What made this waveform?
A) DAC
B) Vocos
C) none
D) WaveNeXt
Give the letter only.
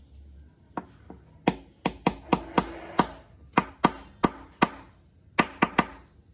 C